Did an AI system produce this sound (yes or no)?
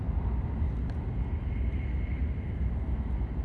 no